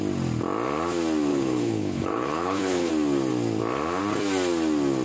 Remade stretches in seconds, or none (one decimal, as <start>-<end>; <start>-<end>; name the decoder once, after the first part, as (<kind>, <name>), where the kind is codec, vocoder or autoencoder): 1.3-2.9 (codec, HILCodec)